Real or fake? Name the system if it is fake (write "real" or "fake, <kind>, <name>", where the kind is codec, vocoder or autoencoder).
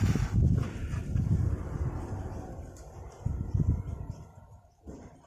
real